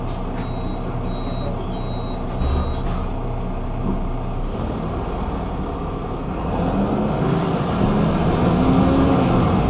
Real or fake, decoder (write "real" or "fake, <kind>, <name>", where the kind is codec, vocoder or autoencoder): real